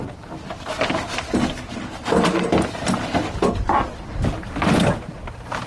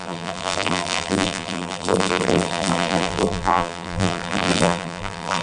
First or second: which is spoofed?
second